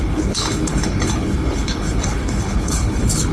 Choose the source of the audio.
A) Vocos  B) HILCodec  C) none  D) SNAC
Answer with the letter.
B